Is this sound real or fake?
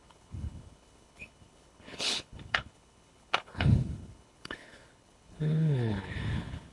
fake